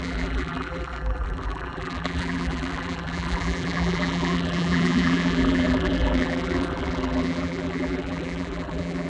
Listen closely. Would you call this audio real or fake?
fake